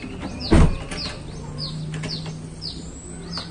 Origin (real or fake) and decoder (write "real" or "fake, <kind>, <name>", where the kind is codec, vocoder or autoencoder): real